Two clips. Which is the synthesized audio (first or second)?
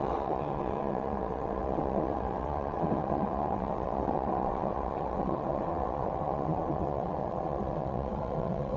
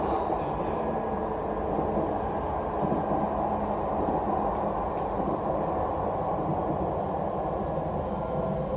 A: first